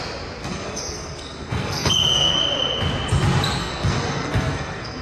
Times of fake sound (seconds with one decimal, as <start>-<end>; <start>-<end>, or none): 0.4-2.4; 3.6-5.0